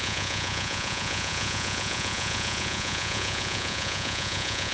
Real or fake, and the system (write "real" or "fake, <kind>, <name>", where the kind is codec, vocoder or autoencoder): fake, vocoder, Vocos